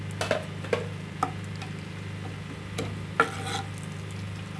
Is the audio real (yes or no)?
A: yes